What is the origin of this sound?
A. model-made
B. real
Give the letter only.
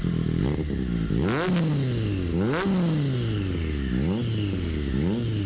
B